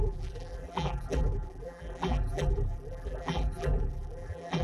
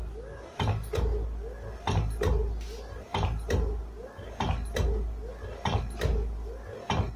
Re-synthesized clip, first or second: first